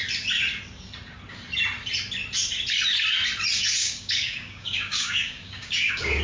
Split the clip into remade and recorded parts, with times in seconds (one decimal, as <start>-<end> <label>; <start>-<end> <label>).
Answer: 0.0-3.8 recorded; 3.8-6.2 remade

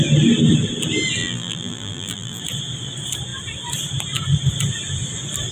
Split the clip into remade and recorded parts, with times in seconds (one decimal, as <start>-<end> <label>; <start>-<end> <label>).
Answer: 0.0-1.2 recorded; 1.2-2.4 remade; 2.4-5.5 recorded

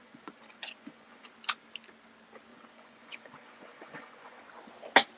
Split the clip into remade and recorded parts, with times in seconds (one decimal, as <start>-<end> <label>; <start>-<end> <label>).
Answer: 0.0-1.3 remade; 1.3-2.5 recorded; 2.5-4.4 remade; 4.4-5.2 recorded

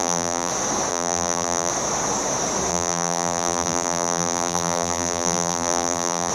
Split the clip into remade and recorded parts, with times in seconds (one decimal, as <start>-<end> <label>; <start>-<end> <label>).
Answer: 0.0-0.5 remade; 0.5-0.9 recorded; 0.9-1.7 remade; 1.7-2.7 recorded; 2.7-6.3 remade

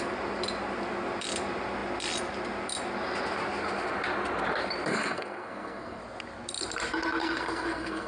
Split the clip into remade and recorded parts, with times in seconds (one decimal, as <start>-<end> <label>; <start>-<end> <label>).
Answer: 0.0-4.9 recorded; 4.9-6.0 remade; 6.0-7.2 recorded; 7.2-8.1 remade

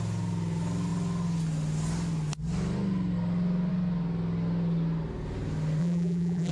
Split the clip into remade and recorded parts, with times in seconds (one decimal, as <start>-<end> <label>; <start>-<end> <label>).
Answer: 0.0-5.8 recorded; 5.8-6.5 remade

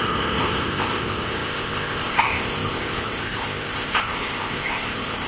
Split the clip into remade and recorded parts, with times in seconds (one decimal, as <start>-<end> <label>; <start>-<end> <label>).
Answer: 0.0-5.3 remade